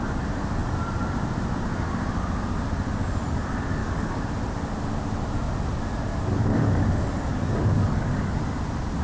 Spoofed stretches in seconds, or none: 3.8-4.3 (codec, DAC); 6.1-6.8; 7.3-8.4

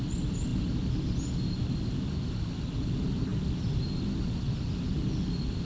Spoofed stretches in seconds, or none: 0.0-0.5 (vocoder, BigVGAN v2); 2.8-5.6

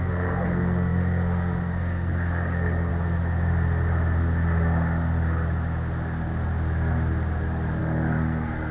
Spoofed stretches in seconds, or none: 0.0-2.9 (codec, SNAC); 7.8-8.7

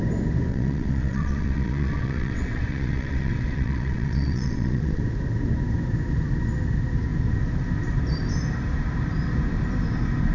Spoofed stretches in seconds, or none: 0.5-5.0 (vocoder, WaveNeXt)

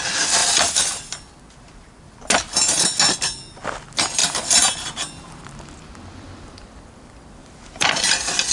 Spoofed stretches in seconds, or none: 4.2-5.4 (vocoder, BigVGAN v2); 7.4-7.9

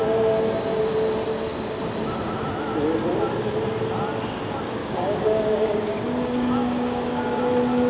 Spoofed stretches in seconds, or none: 4.8-7.4 (codec, DAC)

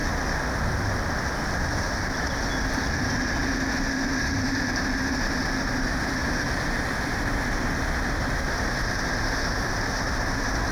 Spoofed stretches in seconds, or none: none

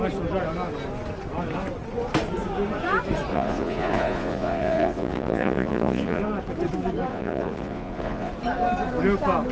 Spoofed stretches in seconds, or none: 3.3-6.2 (vocoder, Vocos); 7.1-8.3